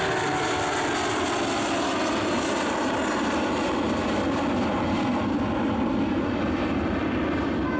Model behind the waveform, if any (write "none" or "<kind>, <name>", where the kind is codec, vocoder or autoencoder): none